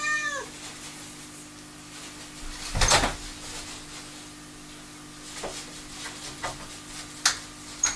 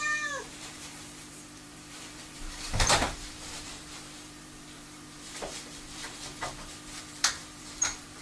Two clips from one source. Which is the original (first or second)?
first